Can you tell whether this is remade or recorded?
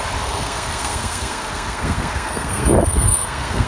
remade